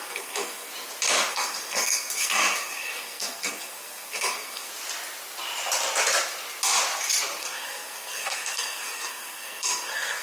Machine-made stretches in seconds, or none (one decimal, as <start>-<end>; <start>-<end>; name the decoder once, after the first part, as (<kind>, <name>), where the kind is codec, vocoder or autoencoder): 0.0-0.7 (codec, SNAC); 1.3-4.7; 7.4-10.2